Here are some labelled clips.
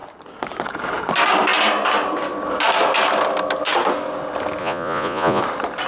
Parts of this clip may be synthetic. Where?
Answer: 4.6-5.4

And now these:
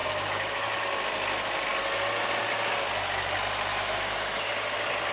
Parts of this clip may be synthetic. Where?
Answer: 0.0-0.8; 3.7-4.4

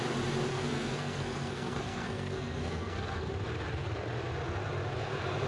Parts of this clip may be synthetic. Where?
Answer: 0.5-3.3

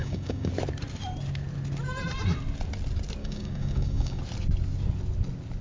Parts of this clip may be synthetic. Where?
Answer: 0.0-0.5; 3.2-4.2

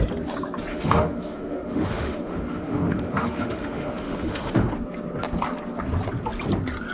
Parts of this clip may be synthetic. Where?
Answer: 0.7-4.7